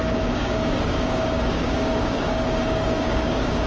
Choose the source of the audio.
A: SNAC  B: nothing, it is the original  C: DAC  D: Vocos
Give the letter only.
C